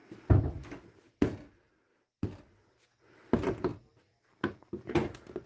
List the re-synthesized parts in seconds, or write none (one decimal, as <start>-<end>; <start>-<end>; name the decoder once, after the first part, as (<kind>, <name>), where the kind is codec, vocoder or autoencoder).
none